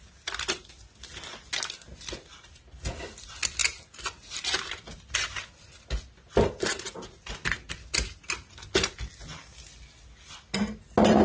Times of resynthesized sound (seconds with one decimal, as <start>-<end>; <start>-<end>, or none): none